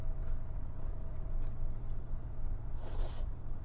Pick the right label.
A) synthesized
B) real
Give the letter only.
A